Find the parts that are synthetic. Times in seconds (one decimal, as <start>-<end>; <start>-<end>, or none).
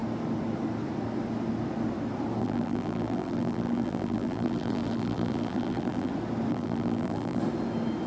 2.4-6.1; 6.5-7.4